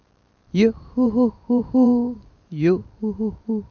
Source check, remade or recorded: remade